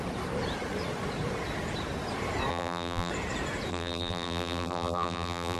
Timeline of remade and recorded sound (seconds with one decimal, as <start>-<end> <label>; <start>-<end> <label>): 0.0-2.5 recorded; 2.5-3.1 remade; 3.1-3.7 recorded; 3.7-5.6 remade